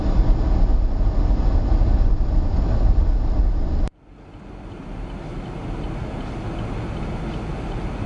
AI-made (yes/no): no